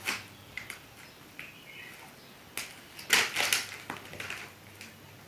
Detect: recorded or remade recorded